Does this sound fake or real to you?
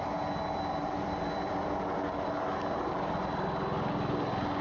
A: real